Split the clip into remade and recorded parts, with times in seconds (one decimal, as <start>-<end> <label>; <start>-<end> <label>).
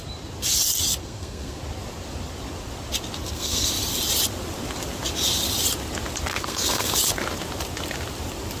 0.0-1.0 recorded; 1.0-1.6 remade; 1.6-3.2 recorded; 3.2-3.7 remade; 3.7-6.3 recorded; 6.3-6.9 remade; 6.9-8.6 recorded